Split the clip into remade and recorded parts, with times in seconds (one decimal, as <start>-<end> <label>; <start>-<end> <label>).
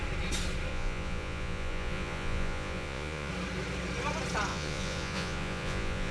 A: 0.0-0.7 recorded; 0.7-3.3 remade; 3.3-4.5 recorded; 4.5-6.1 remade